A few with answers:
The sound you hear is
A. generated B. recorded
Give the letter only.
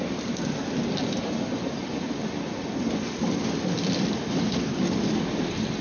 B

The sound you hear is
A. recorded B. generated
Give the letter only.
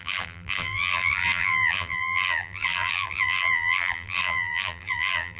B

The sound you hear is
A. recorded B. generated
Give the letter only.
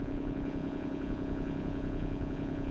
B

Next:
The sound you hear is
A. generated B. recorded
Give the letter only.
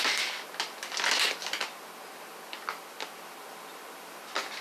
B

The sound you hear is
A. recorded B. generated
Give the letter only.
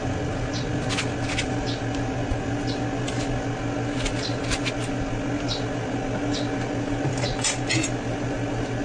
A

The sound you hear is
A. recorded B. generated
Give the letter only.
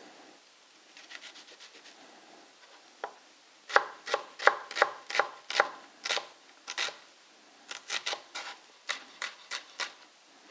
A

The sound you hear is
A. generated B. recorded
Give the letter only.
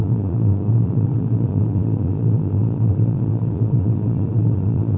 A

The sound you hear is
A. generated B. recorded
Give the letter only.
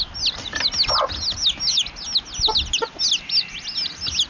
B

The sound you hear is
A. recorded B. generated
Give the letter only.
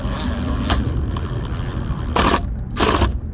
A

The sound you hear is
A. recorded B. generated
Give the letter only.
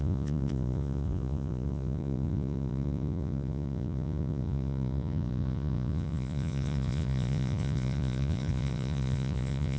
B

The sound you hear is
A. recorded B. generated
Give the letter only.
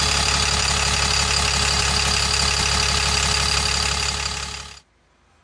A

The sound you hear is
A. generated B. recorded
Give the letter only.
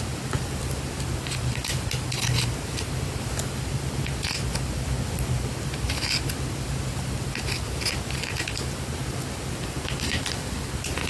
B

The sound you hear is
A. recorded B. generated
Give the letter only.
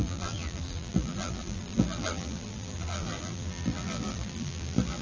B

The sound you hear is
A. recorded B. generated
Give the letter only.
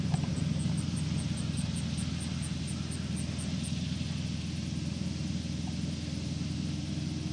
A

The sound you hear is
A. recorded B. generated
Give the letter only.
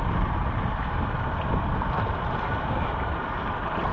A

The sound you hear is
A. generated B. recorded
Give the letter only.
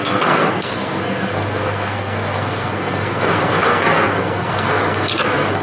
A